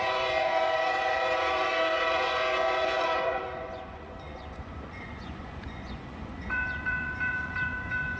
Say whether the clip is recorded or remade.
remade